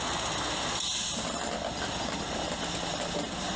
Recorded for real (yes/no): yes